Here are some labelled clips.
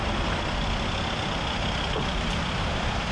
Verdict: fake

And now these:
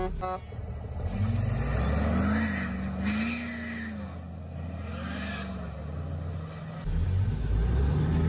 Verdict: real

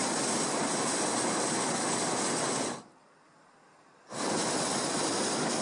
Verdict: real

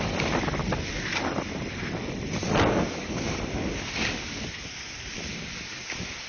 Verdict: real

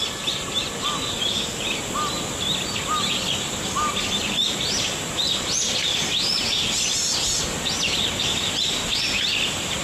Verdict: real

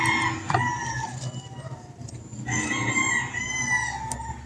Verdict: real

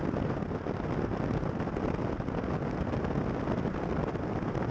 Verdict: real